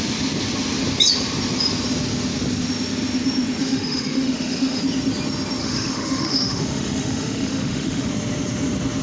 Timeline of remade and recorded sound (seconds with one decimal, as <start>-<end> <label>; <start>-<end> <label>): 0.0-3.6 recorded; 3.6-4.8 remade; 4.8-5.6 recorded; 5.6-8.1 remade; 8.1-9.0 recorded